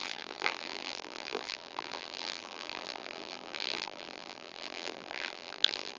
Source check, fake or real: fake